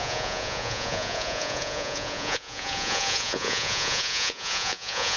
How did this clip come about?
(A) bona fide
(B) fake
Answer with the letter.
B